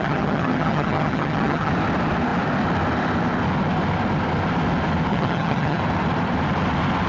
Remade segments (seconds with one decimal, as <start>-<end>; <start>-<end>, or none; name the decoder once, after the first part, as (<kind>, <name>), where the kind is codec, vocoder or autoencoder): 0.0-1.7 (vocoder, HiFi-GAN); 5.1-5.8